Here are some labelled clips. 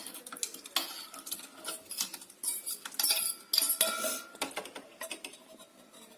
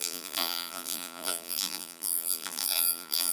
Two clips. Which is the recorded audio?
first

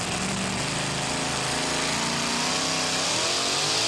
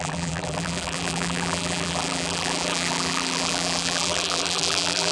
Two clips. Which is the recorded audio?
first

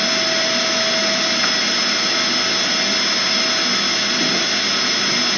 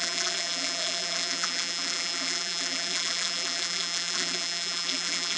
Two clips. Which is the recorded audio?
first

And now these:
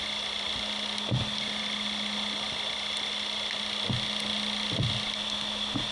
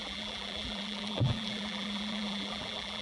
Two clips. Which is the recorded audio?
first